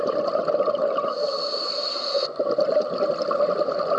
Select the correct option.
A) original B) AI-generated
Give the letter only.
A